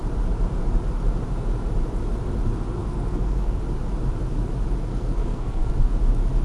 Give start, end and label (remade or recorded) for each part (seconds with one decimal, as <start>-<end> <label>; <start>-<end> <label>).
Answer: 0.0-2.8 recorded; 2.8-3.6 remade; 3.6-4.9 recorded; 4.9-5.7 remade; 5.7-6.4 recorded